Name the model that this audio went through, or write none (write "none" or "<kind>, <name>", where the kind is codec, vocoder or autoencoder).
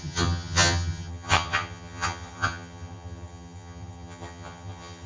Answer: vocoder, HiFi-GAN